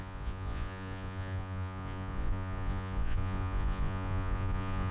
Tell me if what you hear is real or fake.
fake